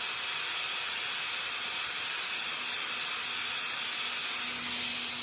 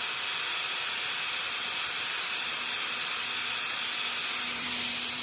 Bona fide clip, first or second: first